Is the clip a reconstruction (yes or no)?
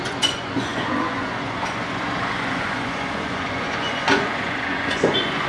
yes